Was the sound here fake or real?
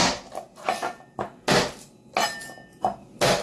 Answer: real